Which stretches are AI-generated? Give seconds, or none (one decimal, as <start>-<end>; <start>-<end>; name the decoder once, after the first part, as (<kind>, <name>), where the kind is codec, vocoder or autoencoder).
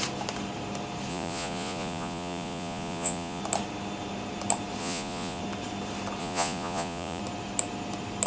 1.1-3.4 (vocoder, Vocos); 4.8-5.4; 6.2-7.2